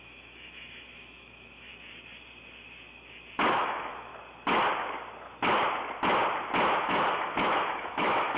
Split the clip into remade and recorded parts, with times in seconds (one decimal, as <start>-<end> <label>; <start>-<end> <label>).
0.0-1.7 remade; 1.7-3.5 recorded; 3.5-4.1 remade; 4.1-6.8 recorded; 6.8-8.4 remade